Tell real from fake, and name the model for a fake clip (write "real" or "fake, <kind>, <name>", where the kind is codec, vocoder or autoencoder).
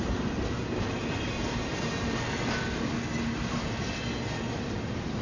real